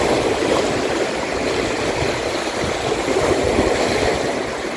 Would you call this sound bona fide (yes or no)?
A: yes